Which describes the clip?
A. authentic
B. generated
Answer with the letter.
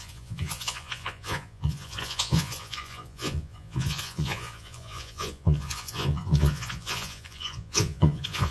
B